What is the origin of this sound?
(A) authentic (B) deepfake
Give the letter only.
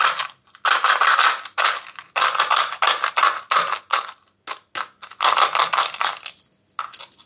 A